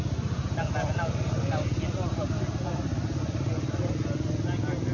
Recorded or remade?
recorded